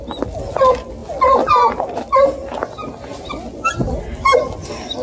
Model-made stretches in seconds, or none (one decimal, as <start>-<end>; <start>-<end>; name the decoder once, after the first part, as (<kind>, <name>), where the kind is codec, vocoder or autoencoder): 2.4-3.3 (vocoder, BigVGAN v2)